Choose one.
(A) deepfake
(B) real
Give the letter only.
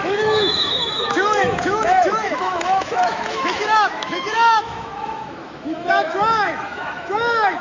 A